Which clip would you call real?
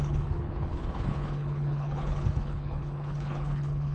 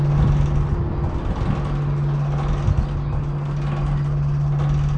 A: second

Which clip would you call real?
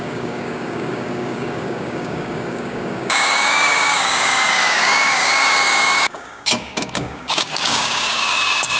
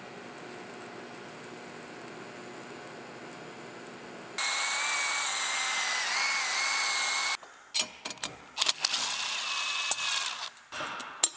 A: second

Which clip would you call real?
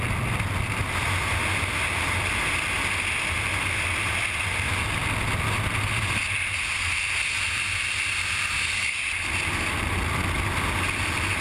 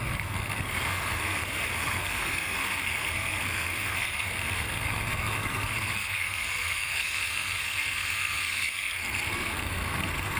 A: first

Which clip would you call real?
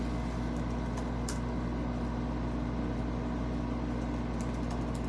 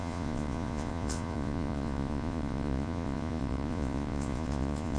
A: first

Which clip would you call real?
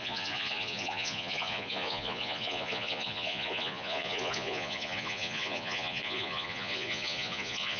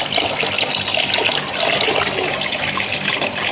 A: second